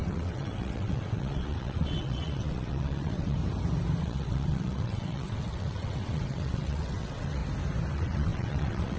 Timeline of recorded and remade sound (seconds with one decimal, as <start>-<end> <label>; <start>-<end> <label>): 0.0-3.4 remade; 3.4-4.0 recorded; 4.0-7.4 remade; 7.4-7.9 recorded; 7.9-9.0 remade